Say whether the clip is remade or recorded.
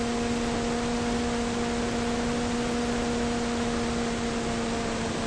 recorded